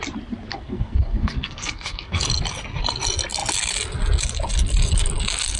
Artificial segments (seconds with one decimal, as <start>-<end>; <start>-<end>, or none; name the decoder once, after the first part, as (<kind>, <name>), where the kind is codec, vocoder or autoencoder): 0.5-2.2 (codec, SNAC)